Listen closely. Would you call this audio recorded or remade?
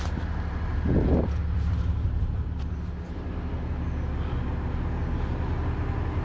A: recorded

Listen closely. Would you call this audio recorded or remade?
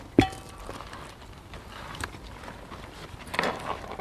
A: recorded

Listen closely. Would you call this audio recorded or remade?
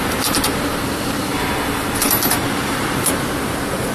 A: remade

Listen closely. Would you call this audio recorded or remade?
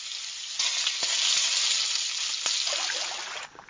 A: recorded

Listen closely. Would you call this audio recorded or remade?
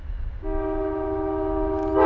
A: recorded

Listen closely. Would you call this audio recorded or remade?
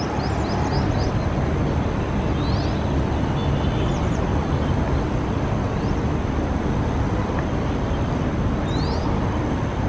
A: recorded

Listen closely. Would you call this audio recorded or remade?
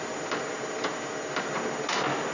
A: recorded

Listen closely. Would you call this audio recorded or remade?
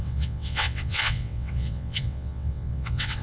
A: remade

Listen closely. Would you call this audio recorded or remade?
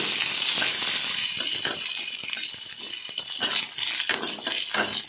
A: recorded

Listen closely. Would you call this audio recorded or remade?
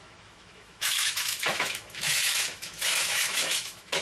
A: remade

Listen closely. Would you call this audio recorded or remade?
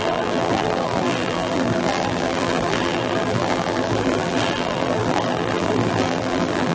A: remade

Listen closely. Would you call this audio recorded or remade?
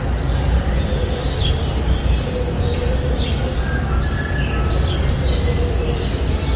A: recorded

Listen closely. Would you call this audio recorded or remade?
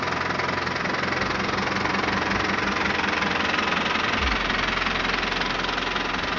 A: recorded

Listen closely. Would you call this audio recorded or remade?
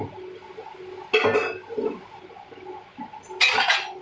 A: recorded